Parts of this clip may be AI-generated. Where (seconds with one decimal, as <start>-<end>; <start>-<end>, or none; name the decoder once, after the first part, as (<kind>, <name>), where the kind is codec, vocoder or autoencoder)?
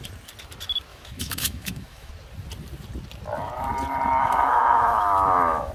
0.9-2.1 (autoencoder, DAC-VAE); 4.2-5.7